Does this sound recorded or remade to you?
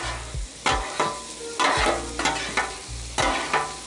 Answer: recorded